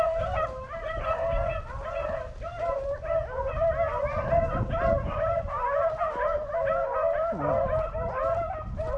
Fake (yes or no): no